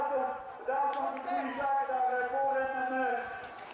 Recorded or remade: recorded